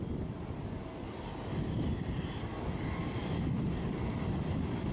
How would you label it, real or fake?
real